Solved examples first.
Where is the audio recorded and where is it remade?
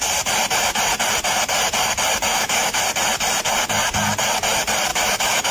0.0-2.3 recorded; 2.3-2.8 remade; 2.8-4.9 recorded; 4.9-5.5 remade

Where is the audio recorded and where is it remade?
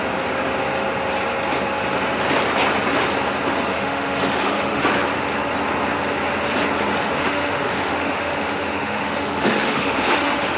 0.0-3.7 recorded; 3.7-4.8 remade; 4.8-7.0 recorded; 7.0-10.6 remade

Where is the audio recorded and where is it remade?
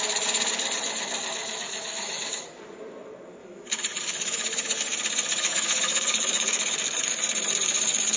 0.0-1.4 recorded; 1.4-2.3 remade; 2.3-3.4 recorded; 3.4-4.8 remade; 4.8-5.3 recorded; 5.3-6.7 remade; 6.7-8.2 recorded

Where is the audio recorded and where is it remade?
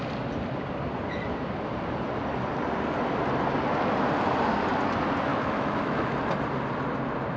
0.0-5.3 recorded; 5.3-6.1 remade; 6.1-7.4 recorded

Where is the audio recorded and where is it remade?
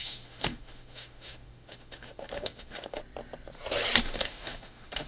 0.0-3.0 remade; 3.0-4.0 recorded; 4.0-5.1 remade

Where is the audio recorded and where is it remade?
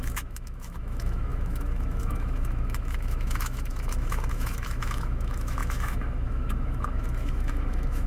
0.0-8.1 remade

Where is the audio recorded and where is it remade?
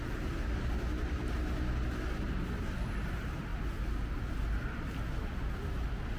0.0-6.2 recorded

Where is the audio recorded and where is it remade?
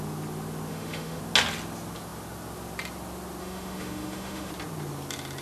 0.0-0.7 recorded; 0.7-1.2 remade; 1.2-3.4 recorded; 3.4-4.5 remade; 4.5-5.4 recorded